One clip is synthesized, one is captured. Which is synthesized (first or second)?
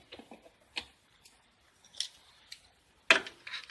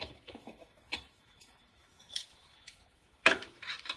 second